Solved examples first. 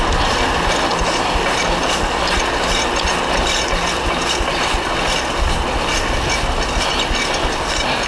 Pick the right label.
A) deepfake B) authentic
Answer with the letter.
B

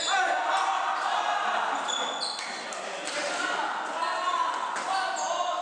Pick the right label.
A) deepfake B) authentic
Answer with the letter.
B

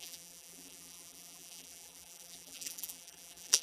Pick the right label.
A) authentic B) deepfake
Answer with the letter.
B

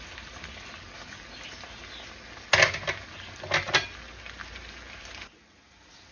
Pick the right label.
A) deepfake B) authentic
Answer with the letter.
B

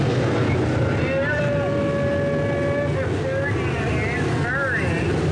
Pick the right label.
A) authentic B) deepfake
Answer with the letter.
A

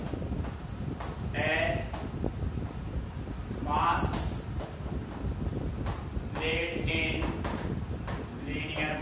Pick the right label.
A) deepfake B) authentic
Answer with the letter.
B